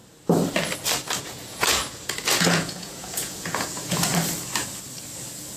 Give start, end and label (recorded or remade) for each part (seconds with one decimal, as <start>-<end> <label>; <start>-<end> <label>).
0.0-1.2 recorded; 1.2-1.8 remade; 1.8-2.4 recorded; 2.4-4.1 remade; 4.1-5.6 recorded